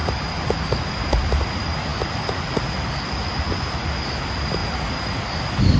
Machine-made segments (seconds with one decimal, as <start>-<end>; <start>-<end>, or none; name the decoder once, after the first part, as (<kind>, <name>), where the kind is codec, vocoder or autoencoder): none